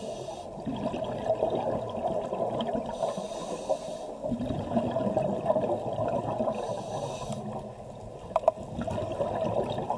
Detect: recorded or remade recorded